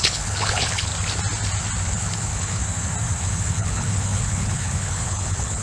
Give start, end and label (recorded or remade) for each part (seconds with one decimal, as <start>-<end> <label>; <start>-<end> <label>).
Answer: 0.0-0.9 remade; 0.9-1.9 recorded; 1.9-2.6 remade; 2.6-3.2 recorded; 3.2-5.6 remade

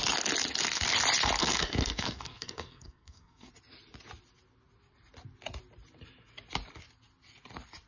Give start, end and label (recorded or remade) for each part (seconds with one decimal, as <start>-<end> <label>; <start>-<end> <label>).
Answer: 0.0-1.4 recorded; 1.4-3.5 remade; 3.5-7.9 recorded

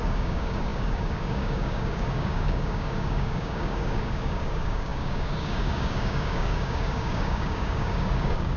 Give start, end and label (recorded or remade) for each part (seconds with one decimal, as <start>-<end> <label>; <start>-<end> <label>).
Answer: 0.0-8.6 remade

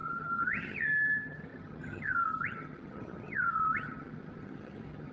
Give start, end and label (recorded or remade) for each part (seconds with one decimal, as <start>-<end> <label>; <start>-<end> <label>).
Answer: 0.0-5.1 remade

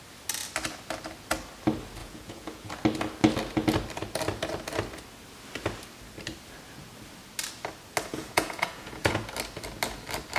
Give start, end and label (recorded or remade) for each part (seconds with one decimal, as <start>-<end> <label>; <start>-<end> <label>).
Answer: 0.0-2.0 recorded; 2.0-2.7 remade; 2.7-8.1 recorded; 8.1-9.2 remade; 9.2-10.4 recorded

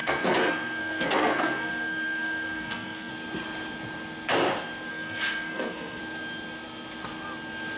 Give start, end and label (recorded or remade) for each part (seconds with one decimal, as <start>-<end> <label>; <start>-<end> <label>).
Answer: 0.0-3.1 remade; 3.1-4.9 recorded; 4.9-6.0 remade; 6.0-7.8 recorded

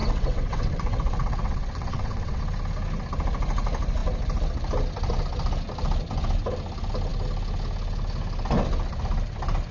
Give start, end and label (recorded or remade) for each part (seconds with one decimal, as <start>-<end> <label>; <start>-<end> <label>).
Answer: 0.0-2.4 remade; 2.4-9.7 recorded